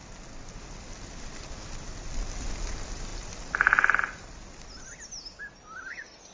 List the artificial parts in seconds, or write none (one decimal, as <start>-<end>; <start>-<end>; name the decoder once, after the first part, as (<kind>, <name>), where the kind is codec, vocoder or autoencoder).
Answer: none